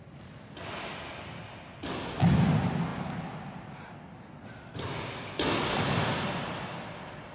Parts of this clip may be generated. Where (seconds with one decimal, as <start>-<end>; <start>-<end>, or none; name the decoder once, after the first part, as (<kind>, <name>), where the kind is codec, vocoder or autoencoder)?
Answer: none